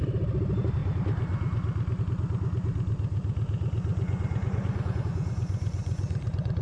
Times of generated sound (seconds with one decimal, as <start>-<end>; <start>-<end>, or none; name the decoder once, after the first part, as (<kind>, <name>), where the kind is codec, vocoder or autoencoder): 3.9-6.6 (vocoder, Vocos)